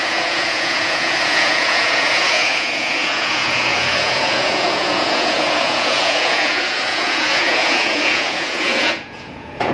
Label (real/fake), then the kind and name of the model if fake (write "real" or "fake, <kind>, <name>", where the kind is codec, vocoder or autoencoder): fake, vocoder, Vocos